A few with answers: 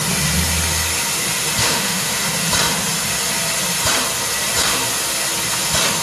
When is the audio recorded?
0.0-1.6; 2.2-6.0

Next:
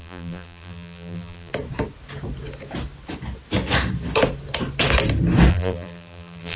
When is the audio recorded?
1.5-5.5